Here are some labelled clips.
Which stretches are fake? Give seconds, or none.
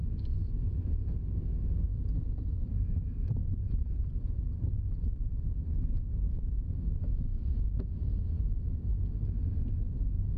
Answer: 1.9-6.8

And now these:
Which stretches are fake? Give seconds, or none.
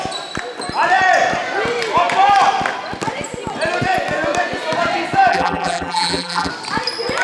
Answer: 5.3-6.5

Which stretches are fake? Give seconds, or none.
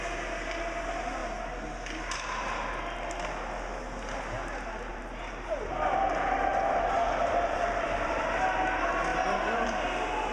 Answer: 6.5-8.2; 9.1-9.7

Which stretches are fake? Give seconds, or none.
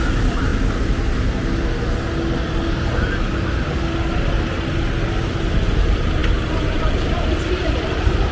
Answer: 0.0-0.5; 5.5-8.3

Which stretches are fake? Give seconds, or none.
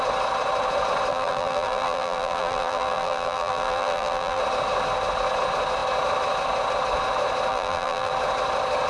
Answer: 1.1-4.4; 7.5-8.1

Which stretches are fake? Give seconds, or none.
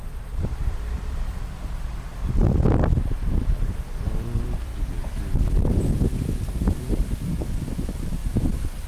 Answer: 0.0-4.7; 7.1-8.2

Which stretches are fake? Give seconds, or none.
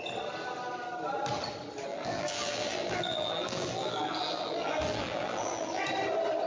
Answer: 1.9-5.8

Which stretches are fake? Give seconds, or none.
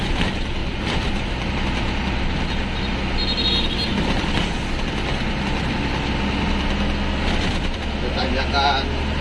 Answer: 0.6-1.5